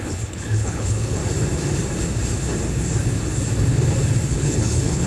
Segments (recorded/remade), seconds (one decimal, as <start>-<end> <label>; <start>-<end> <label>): 0.0-1.2 remade; 1.2-4.3 recorded; 4.3-5.1 remade